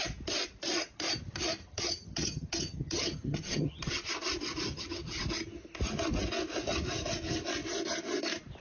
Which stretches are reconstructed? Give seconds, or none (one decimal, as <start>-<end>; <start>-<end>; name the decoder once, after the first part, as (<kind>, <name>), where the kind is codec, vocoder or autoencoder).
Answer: 1.6-4.0 (vocoder, HiFi-GAN); 4.7-5.2